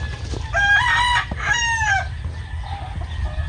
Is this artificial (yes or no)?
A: no